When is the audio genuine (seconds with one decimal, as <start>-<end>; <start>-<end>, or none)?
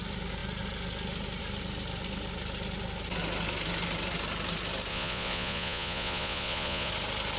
0.0-4.9; 6.9-7.4